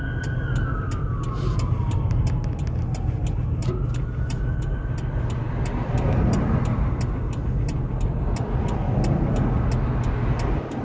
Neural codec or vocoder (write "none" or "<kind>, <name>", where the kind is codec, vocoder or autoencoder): none